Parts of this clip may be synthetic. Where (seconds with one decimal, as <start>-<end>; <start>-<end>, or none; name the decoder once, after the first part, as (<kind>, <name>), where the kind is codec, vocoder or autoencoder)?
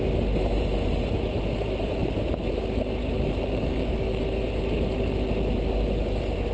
3.0-4.2 (codec, DAC)